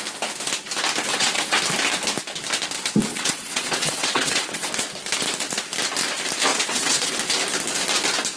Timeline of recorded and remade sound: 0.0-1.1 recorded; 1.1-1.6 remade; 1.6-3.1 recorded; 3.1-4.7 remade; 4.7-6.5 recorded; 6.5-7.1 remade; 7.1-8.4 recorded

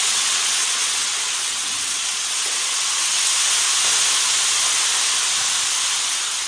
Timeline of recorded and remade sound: 0.0-3.3 remade; 3.3-6.0 recorded; 6.0-6.5 remade

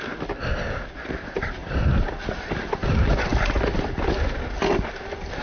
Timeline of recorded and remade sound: 0.0-5.4 recorded

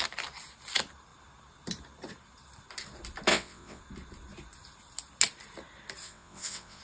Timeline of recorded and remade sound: 0.0-3.3 recorded; 3.3-3.8 remade; 3.8-6.0 recorded; 6.0-6.8 remade

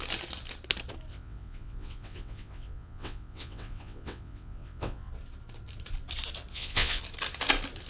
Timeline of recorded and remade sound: 0.0-1.1 recorded; 1.1-5.1 remade; 5.1-6.5 recorded; 6.5-7.0 remade; 7.0-7.9 recorded

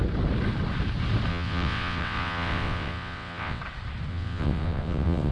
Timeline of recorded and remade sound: 0.0-1.3 recorded; 1.3-3.6 remade; 3.6-4.1 recorded; 4.1-5.3 remade